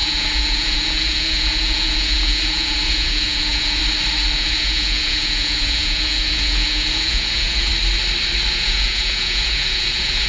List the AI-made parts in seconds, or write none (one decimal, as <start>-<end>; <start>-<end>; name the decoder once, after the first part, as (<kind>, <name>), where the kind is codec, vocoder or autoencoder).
0.0-3.8 (vocoder, Vocos); 4.3-7.7; 8.5-10.3